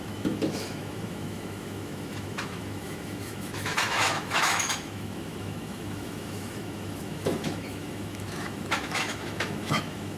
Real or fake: fake